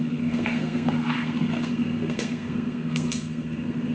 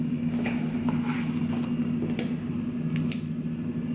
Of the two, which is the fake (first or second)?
first